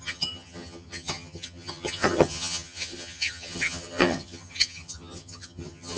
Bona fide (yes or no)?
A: no